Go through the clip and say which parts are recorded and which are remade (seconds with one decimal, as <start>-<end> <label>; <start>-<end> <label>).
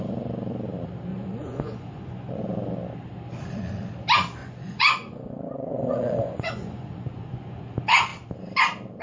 0.0-1.1 recorded; 1.1-2.4 remade; 2.4-4.4 recorded; 4.4-7.6 remade; 7.6-9.0 recorded